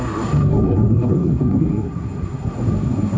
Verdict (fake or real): fake